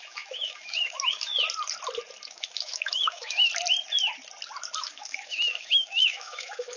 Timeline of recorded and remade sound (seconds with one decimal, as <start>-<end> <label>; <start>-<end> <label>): 0.0-1.3 remade; 1.3-2.3 recorded; 2.3-3.5 remade; 3.5-4.8 recorded; 4.8-6.8 remade